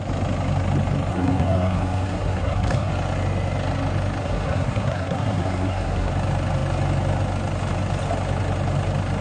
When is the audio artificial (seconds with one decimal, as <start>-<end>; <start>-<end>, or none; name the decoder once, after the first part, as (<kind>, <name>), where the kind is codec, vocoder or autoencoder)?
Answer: 1.1-2.9 (codec, SNAC); 4.2-6.1